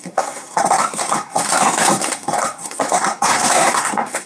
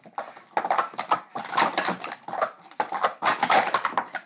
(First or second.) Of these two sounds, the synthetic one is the first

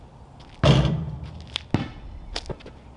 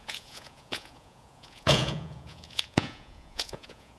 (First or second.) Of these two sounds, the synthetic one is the second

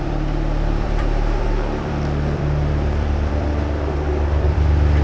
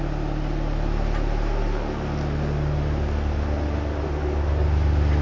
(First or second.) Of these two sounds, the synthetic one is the first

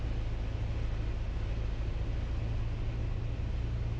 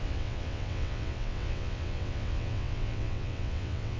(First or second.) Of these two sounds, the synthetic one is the second